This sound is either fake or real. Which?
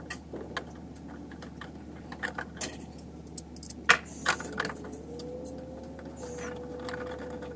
real